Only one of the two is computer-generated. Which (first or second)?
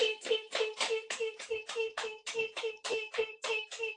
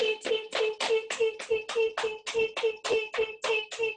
first